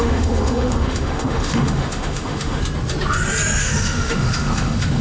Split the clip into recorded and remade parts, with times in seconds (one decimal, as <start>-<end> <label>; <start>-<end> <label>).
0.0-2.6 remade; 2.6-3.6 recorded; 3.6-5.0 remade